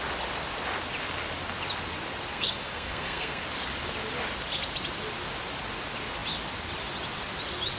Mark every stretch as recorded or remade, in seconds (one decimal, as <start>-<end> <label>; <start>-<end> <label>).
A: 0.0-2.3 recorded; 2.3-3.4 remade; 3.4-7.8 recorded